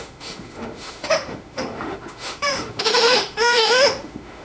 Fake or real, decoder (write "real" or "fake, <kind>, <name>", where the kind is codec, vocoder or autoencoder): fake, autoencoder, DAC-VAE